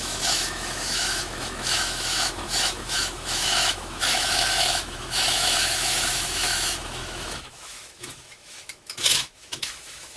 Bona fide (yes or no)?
no